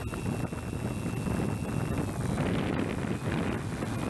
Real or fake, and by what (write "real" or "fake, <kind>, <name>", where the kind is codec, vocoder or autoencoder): real